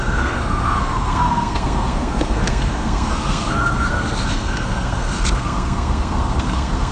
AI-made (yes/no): yes